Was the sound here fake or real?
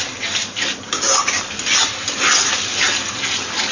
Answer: real